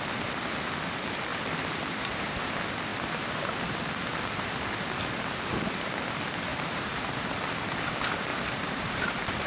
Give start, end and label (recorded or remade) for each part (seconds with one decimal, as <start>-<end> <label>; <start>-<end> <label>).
0.0-1.3 recorded; 1.3-2.5 remade; 2.5-2.9 recorded; 2.9-3.5 remade; 3.5-6.5 recorded; 6.5-7.2 remade; 7.2-8.3 recorded; 8.3-9.5 remade